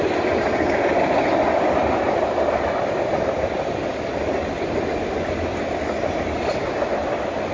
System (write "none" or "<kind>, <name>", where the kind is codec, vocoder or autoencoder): none